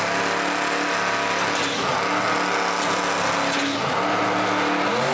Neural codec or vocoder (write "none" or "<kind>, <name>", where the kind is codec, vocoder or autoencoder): none